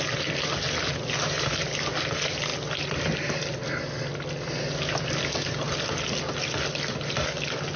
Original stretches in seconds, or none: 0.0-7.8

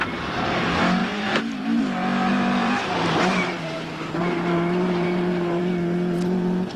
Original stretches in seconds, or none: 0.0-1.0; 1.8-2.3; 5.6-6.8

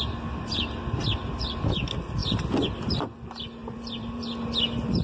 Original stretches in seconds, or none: 2.2-2.9

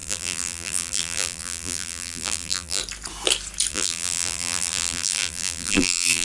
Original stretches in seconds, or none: 2.8-3.7

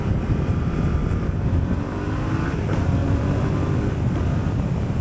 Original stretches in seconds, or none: 3.0-5.0